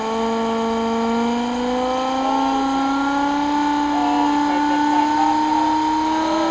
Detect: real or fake real